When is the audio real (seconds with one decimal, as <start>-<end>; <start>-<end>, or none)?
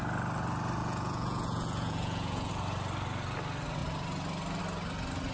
0.0-0.8; 2.5-5.3